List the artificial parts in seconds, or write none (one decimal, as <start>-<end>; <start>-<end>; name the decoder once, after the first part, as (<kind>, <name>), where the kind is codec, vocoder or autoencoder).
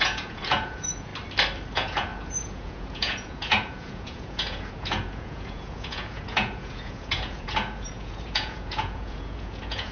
0.0-1.1 (vocoder, Vocos); 1.7-9.9